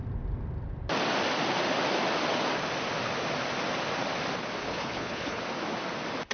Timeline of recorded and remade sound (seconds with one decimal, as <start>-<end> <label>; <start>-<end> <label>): 0.0-4.6 recorded; 4.6-5.4 remade; 5.4-6.3 recorded